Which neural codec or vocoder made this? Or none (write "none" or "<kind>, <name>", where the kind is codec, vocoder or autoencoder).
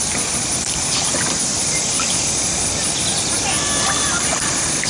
none